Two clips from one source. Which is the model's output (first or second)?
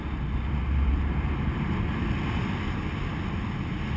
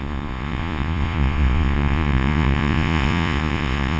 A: second